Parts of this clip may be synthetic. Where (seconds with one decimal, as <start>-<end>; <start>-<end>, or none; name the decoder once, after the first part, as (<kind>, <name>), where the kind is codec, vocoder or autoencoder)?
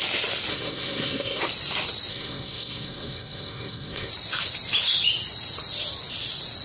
0.5-1.4 (codec, SNAC); 2.1-4.1